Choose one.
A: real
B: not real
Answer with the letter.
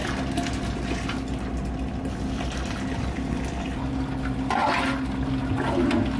A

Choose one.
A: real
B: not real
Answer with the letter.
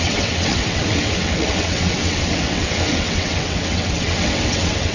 B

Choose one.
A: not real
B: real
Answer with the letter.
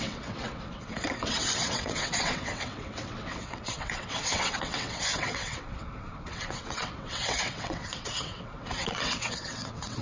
A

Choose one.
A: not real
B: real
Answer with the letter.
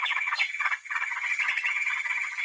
A